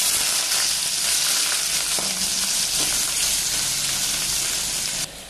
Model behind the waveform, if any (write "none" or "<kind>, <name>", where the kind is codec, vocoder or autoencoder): none